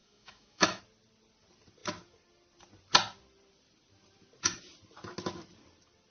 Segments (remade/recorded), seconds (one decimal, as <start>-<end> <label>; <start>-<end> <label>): 0.0-0.8 remade; 0.8-6.1 recorded